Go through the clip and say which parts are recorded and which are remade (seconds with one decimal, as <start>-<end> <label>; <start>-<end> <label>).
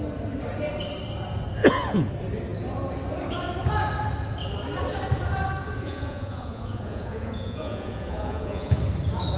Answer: 0.0-1.6 recorded; 1.6-2.1 remade; 2.1-5.6 recorded; 5.6-8.8 remade; 8.8-9.4 recorded